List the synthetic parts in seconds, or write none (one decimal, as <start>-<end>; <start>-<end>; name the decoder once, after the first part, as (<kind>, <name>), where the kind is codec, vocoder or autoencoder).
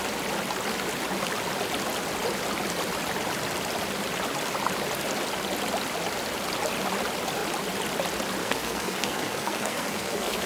8.4-10.5 (codec, SNAC)